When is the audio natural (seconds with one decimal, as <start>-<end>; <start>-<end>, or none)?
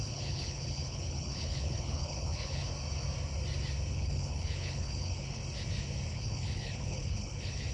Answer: 2.7-3.9; 5.4-6.1